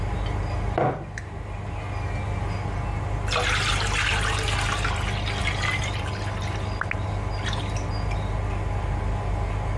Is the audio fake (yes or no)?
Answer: no